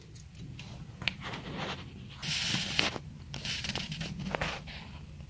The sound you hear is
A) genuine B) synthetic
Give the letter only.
A